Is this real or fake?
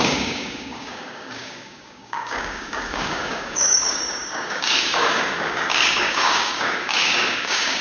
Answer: fake